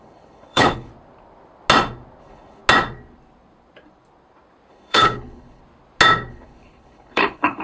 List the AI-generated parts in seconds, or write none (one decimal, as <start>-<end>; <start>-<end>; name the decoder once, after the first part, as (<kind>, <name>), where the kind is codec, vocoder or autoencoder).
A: 0.0-0.9 (codec, HILCodec); 2.2-2.6; 4.7-5.6; 6.3-7.6

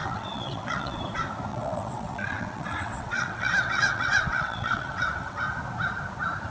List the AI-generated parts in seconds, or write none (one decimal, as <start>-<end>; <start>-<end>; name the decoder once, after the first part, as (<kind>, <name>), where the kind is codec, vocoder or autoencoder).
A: 0.0-1.0 (vocoder, WaveNeXt); 1.5-5.4